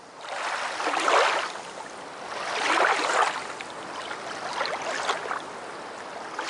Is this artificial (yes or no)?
no